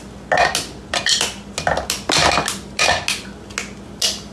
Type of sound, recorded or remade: recorded